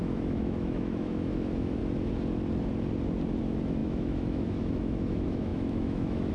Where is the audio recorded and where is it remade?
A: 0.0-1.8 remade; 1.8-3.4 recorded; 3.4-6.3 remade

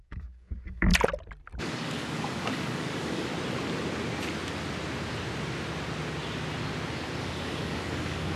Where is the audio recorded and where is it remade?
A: 0.0-0.9 remade; 0.9-1.6 recorded; 1.6-3.3 remade; 3.3-7.2 recorded; 7.2-8.4 remade

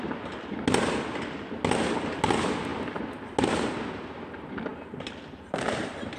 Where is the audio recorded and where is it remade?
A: 0.0-6.2 recorded

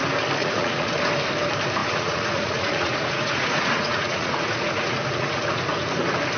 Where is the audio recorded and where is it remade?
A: 0.0-0.4 recorded; 0.4-0.9 remade; 0.9-1.8 recorded; 1.8-5.6 remade; 5.6-6.4 recorded